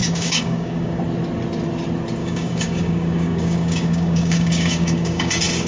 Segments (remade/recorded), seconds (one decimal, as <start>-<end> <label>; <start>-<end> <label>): 0.0-1.0 remade; 1.0-2.2 recorded; 2.2-5.3 remade; 5.3-5.7 recorded